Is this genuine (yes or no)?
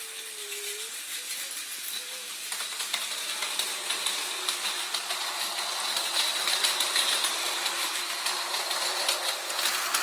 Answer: yes